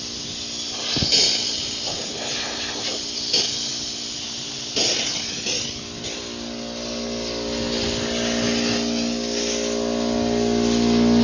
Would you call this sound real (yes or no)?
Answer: yes